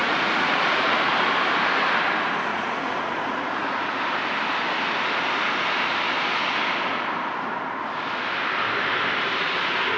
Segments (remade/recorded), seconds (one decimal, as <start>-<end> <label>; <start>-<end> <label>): 0.0-1.2 remade; 1.2-2.5 recorded; 2.5-4.0 remade; 4.0-10.0 recorded